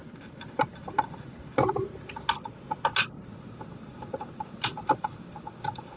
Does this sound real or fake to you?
real